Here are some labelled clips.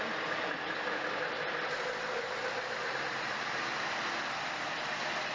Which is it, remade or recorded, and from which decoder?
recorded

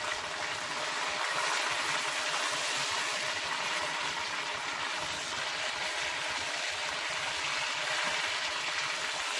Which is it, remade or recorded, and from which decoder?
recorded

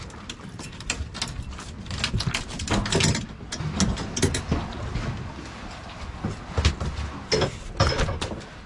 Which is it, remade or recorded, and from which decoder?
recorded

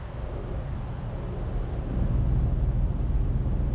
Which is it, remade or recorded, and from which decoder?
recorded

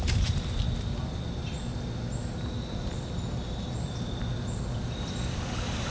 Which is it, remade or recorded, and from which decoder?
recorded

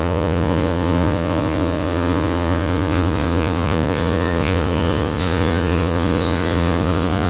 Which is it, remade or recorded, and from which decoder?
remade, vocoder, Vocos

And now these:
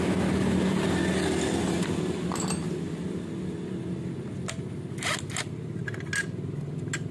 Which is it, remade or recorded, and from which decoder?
recorded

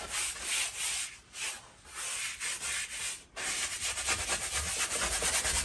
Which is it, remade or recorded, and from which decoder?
recorded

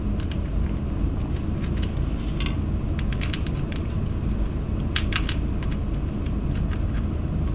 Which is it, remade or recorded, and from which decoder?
recorded